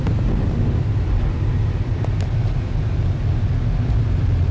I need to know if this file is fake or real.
real